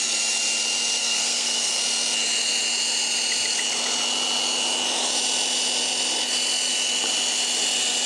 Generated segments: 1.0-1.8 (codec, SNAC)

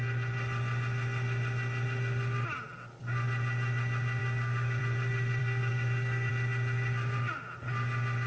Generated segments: 4.2-4.8 (codec, DAC); 5.4-6.3

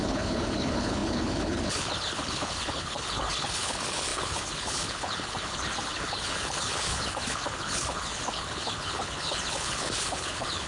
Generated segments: 0.0-10.7 (codec, HILCodec)

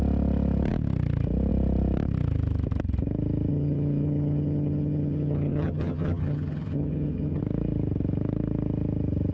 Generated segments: 3.5-7.4 (vocoder, HiFi-GAN)

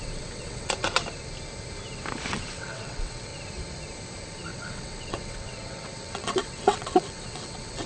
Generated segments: 0.0-1.0 (vocoder, WaveNeXt); 2.3-3.3; 4.5-7.9

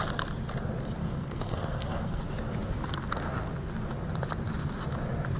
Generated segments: 1.0-2.2 (codec, SNAC)

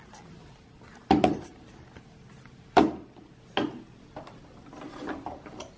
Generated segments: none